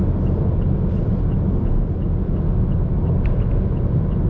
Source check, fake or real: real